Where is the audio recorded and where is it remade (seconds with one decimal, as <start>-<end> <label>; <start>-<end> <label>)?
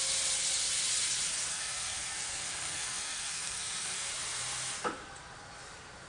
0.0-1.5 recorded; 1.5-4.1 remade; 4.1-6.1 recorded